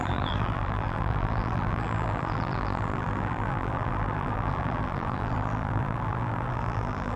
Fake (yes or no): yes